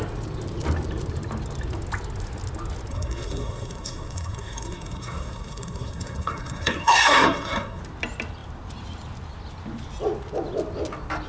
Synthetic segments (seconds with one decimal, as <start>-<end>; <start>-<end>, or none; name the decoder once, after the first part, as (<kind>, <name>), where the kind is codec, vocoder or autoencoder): 2.9-7.8 (codec, SNAC)